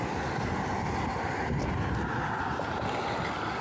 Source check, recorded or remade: recorded